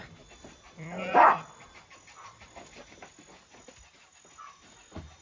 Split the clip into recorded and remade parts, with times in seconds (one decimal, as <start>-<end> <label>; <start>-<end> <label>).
0.0-5.2 recorded

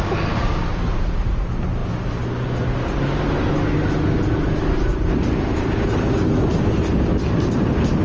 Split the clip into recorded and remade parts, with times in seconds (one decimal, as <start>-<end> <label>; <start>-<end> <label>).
0.0-8.0 recorded

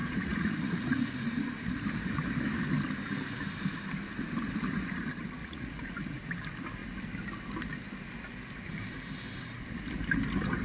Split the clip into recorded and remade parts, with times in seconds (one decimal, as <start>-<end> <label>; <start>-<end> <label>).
0.0-1.1 remade; 1.1-5.4 recorded; 5.4-6.0 remade; 6.0-10.6 recorded